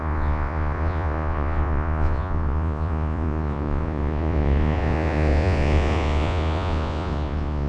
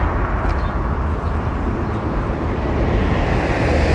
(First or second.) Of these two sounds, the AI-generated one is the first